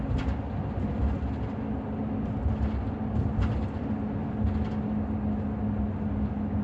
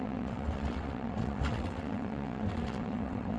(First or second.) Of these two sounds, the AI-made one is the second